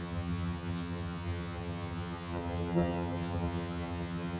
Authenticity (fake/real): fake